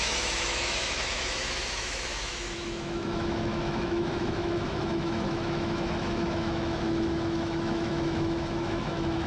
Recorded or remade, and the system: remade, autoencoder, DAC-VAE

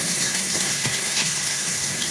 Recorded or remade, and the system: remade, codec, SNAC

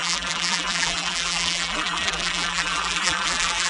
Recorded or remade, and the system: remade, vocoder, BigVGAN v2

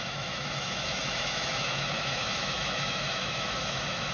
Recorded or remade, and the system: remade, autoencoder, DAC-VAE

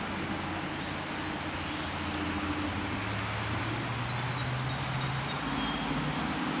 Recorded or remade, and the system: recorded